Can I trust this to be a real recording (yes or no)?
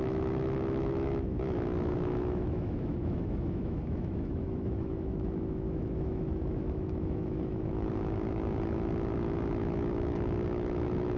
no